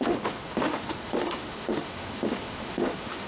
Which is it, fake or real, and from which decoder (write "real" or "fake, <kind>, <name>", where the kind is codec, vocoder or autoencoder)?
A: fake, autoencoder, DAC-VAE